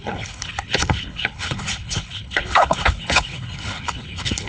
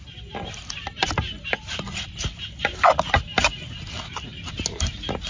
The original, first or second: second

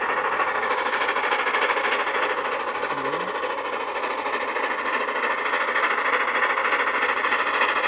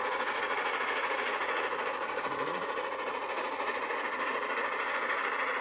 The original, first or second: first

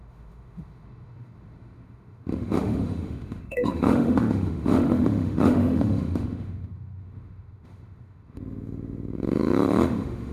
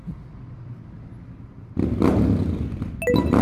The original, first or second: second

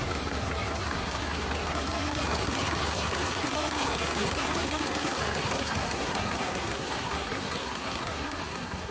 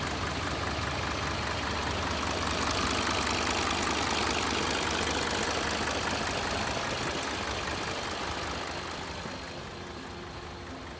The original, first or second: second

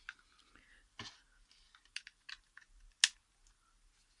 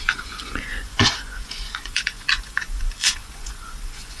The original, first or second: first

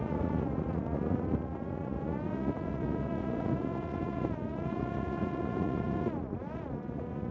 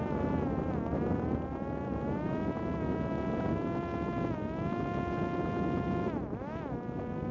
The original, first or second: second